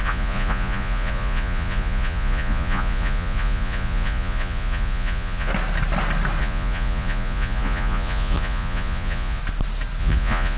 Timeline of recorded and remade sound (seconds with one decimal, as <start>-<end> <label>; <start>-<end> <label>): 0.0-5.5 remade; 5.5-6.4 recorded; 6.4-9.4 remade; 9.4-10.0 recorded; 10.0-10.6 remade